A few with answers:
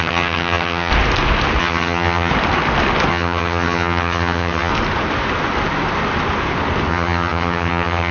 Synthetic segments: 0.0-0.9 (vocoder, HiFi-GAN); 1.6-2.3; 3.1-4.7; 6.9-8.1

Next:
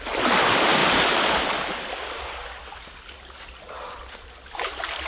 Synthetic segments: none

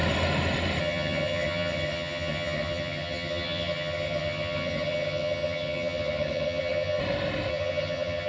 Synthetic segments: 0.8-7.0 (vocoder, HiFi-GAN); 7.5-8.3

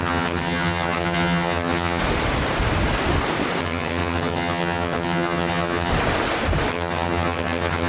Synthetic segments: 0.0-2.0 (vocoder, HiFi-GAN); 3.6-5.9; 6.7-7.9

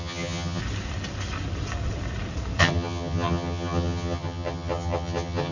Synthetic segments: 0.0-0.6 (vocoder, HiFi-GAN); 2.6-5.5

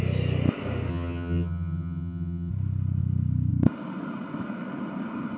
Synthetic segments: 0.9-2.5 (vocoder, HiFi-GAN)